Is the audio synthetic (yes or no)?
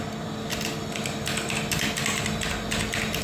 no